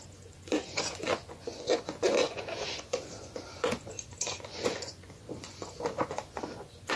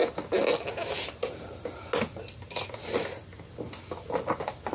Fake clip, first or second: first